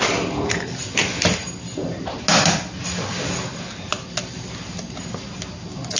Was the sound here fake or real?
real